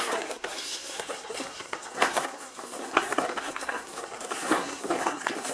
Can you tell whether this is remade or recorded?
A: remade